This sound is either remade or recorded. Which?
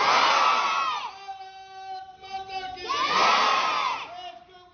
recorded